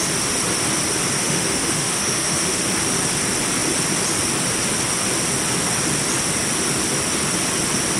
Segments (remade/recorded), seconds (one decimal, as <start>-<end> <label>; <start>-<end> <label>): 0.0-1.2 recorded; 1.2-2.6 remade; 2.6-8.0 recorded